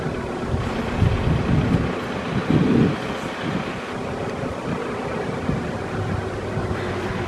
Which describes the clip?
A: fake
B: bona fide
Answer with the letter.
B